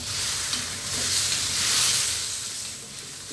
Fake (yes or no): yes